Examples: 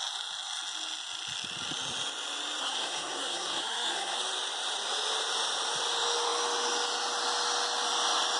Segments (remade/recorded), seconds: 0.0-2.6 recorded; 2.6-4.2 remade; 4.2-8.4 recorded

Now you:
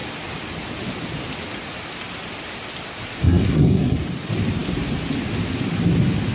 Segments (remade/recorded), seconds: 0.0-3.2 recorded; 3.2-4.0 remade; 4.0-6.3 recorded

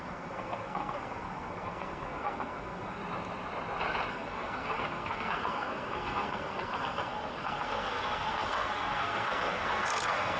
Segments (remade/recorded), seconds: 0.0-3.0 remade; 3.0-4.1 recorded; 4.1-10.4 remade

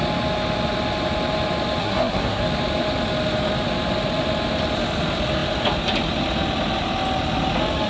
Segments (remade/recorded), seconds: 0.0-1.8 recorded; 1.8-2.4 remade; 2.4-7.9 recorded

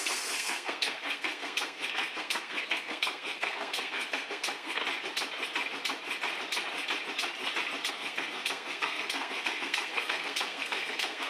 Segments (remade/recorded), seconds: 0.0-4.8 remade; 4.8-7.9 recorded; 7.9-11.3 remade